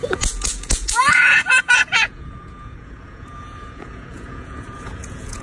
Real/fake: fake